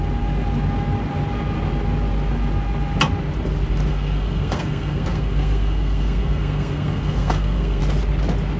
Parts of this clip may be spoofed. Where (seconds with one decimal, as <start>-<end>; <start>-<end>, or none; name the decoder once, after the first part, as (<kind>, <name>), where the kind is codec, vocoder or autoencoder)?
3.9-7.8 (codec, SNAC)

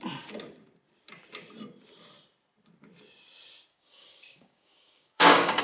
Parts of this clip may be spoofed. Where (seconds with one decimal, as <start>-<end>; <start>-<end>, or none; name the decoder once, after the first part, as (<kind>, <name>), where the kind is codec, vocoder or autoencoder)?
3.7-5.6 (codec, DAC)

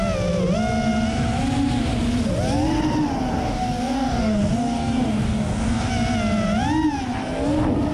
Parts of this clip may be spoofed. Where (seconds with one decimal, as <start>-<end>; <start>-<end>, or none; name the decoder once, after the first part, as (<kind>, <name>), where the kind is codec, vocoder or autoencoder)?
3.3-5.9 (codec, DAC)

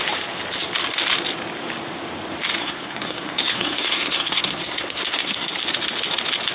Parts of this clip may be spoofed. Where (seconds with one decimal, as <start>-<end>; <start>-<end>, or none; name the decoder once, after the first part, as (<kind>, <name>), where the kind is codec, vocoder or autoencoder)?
2.6-5.5 (codec, SNAC)

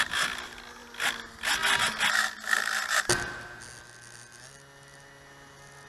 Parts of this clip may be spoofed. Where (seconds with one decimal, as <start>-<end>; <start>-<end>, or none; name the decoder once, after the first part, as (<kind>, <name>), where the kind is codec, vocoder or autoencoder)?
none

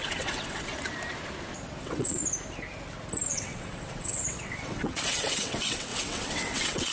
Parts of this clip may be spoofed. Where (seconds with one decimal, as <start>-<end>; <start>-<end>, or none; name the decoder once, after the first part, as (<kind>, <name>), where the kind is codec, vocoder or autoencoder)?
0.0-0.7 (vocoder, WaveNeXt); 1.8-2.2; 3.3-6.9